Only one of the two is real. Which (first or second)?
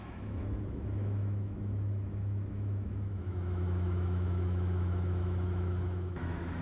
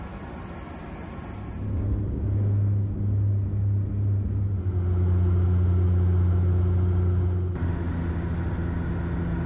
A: second